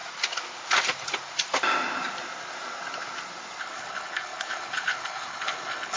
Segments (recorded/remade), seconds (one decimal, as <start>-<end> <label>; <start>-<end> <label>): 0.0-3.6 recorded; 3.6-6.0 remade